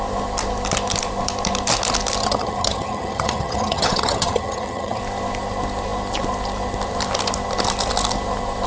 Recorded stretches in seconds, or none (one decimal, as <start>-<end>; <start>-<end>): 0.0-2.2; 5.0-8.7